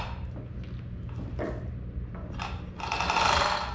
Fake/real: real